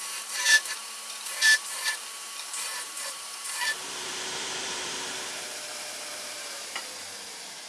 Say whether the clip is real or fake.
fake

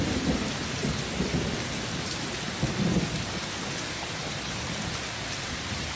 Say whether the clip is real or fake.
real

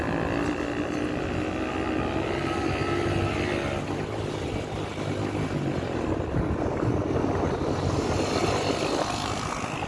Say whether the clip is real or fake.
real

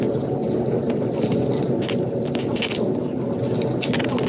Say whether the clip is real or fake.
real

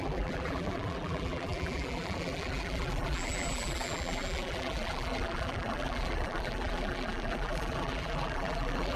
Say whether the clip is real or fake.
fake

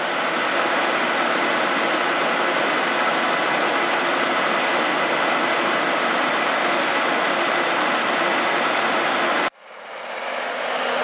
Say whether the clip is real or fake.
real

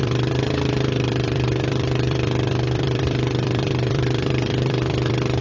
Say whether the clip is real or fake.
fake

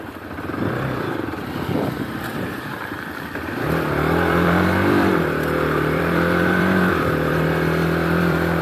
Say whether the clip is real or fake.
fake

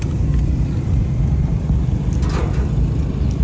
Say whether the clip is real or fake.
fake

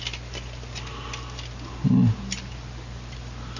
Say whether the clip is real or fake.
real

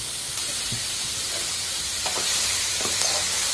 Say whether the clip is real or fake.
fake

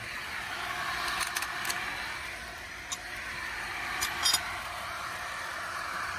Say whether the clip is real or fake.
real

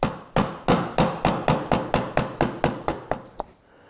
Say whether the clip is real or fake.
real